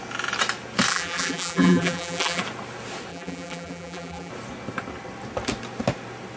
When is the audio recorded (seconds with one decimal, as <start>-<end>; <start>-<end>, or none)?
0.0-0.9; 2.4-3.1; 4.3-6.4